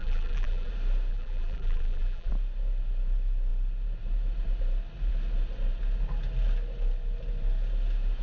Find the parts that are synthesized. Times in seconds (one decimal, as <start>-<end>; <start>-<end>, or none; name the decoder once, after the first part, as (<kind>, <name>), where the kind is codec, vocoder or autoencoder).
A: 0.0-0.7 (vocoder, BigVGAN v2); 1.1-2.3